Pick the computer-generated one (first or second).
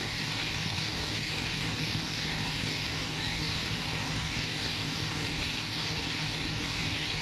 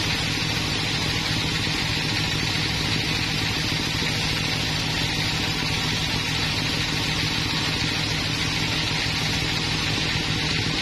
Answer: first